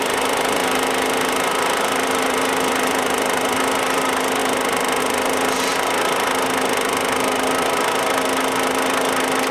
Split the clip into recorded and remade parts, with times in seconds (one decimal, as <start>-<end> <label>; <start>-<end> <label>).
0.0-0.6 remade; 0.6-1.5 recorded; 1.5-4.4 remade; 4.4-5.0 recorded; 5.0-5.7 remade; 5.7-9.5 recorded